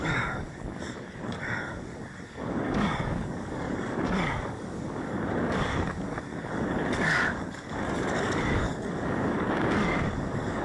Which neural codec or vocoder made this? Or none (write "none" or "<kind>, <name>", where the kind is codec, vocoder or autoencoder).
codec, DAC